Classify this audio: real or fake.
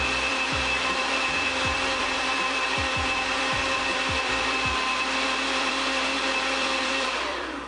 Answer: fake